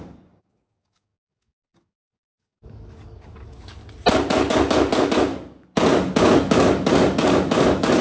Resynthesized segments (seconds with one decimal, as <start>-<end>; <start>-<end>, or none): 0.0-3.8; 4.3-8.0